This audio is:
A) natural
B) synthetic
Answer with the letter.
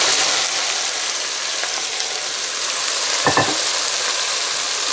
A